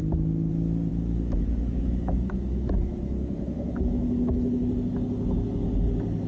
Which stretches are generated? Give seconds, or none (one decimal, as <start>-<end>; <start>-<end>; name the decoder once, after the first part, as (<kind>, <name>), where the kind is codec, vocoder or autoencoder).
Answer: 0.9-4.7 (autoencoder, DAC-VAE)